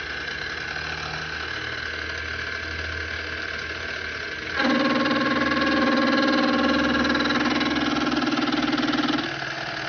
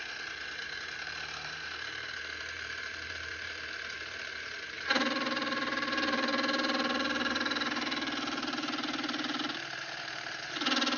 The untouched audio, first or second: first